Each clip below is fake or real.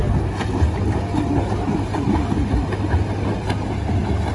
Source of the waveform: real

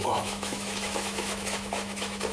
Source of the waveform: fake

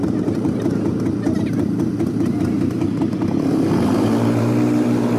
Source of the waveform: fake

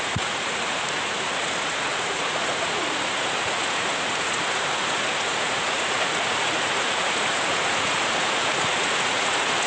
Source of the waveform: fake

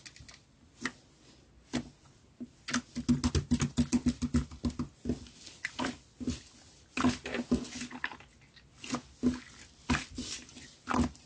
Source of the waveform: real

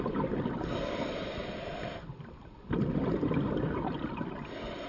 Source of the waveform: real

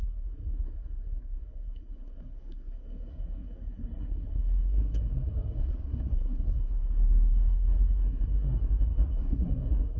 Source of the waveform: fake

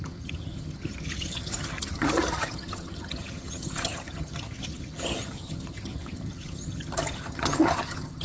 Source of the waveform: fake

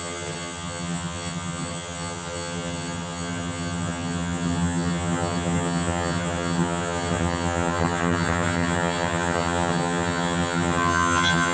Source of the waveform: fake